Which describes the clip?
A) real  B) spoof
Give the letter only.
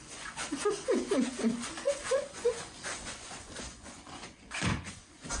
B